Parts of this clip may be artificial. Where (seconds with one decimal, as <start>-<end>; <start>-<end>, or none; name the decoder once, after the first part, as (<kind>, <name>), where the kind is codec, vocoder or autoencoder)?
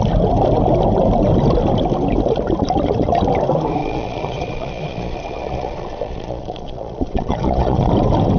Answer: 3.8-7.9 (vocoder, Vocos)